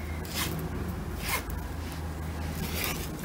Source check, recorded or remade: recorded